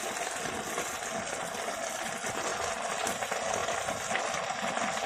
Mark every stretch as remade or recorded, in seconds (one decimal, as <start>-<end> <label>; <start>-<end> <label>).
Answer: 0.0-5.1 recorded